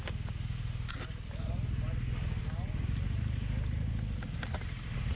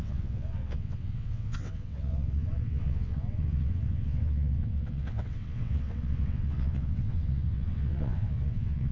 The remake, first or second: second